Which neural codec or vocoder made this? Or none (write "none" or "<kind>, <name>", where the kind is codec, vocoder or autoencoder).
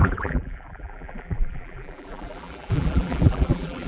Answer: vocoder, BigVGAN v2